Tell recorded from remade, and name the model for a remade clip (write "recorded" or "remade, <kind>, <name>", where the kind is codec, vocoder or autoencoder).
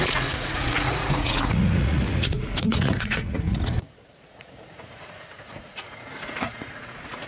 remade, vocoder, Vocos